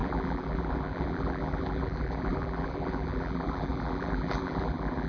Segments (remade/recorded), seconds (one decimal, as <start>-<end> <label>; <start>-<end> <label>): 0.0-5.1 remade

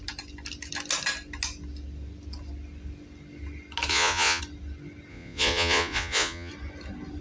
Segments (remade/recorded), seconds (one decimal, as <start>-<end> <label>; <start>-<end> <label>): 0.0-3.9 recorded; 3.9-4.4 remade; 4.4-5.1 recorded; 5.1-6.5 remade; 6.5-7.2 recorded

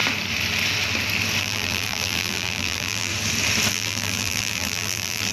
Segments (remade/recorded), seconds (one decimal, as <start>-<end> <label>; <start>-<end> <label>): 0.0-1.4 recorded; 1.4-3.1 remade; 3.1-3.7 recorded; 3.7-5.3 remade

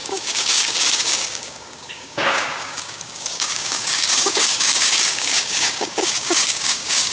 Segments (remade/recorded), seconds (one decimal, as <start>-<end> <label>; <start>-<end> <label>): 0.0-7.1 remade